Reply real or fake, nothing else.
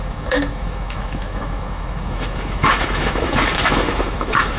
fake